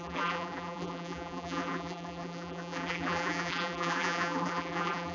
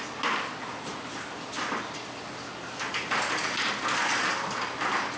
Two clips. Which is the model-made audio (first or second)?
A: first